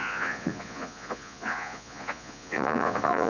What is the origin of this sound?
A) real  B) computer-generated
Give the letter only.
B